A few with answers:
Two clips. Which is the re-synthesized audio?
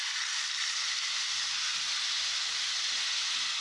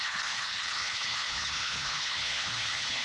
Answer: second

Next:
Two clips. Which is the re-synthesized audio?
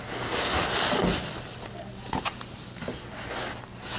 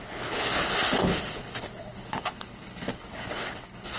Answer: second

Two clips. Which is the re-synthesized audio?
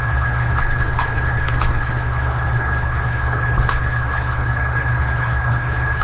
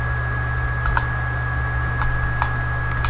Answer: first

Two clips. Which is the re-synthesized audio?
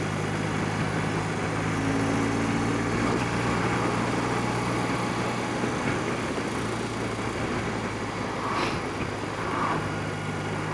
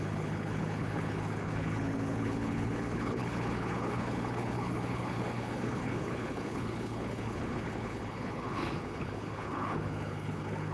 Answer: second